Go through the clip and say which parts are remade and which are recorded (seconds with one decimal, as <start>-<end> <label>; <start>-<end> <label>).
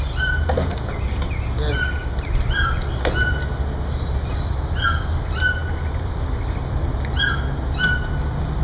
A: 0.0-8.6 recorded